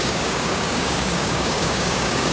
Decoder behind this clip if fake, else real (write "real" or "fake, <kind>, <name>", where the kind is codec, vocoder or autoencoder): fake, codec, DAC